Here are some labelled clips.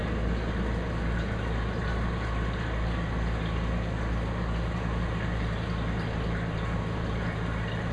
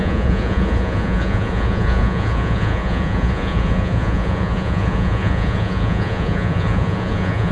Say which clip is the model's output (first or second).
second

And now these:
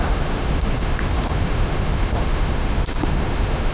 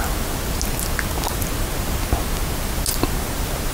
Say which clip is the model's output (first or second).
first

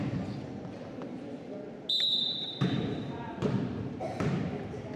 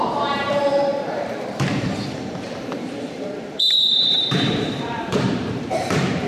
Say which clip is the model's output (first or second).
second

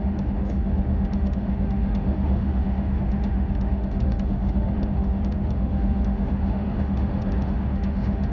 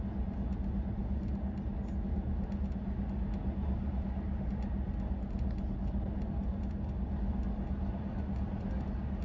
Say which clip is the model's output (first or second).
first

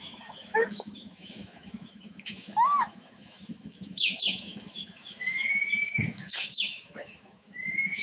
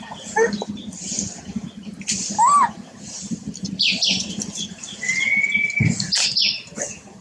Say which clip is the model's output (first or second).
first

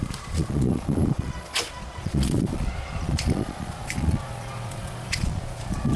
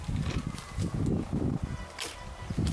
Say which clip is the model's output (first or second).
first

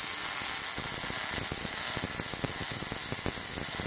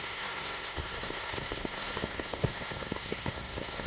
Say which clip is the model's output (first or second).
second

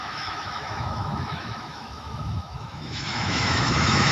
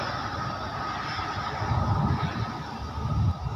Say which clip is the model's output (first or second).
first